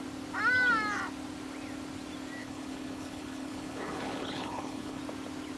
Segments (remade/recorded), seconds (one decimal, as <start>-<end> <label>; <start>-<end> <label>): 0.0-2.4 recorded; 2.4-5.0 remade; 5.0-5.6 recorded